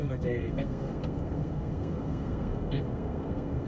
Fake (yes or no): yes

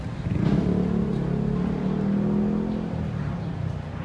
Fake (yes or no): no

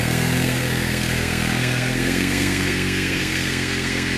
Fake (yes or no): yes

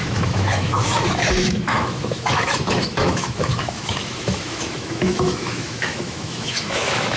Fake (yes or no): yes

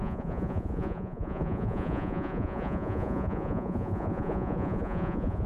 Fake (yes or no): yes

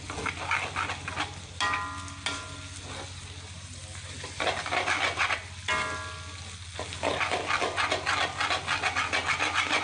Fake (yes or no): no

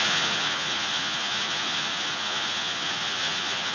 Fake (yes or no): yes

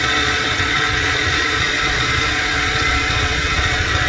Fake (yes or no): yes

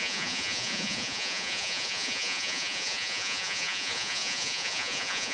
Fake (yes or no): yes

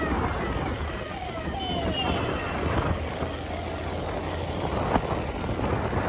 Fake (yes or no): no